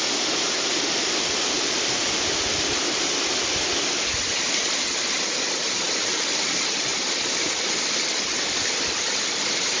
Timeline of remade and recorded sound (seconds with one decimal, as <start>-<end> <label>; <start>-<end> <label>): 0.0-9.8 recorded